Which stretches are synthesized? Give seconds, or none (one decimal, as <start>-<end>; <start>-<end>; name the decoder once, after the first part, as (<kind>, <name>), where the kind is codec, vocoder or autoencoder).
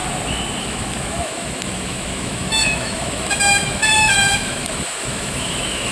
0.6-5.9 (autoencoder, DAC-VAE)